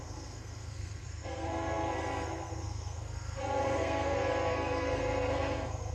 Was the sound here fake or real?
fake